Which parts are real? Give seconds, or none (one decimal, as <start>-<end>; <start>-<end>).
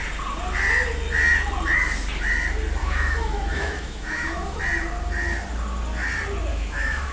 0.0-2.8; 4.6-6.5